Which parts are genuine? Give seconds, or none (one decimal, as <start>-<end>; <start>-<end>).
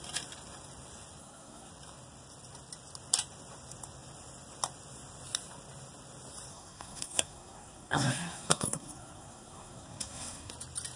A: 0.0-1.2; 1.7-6.5; 10.5-11.0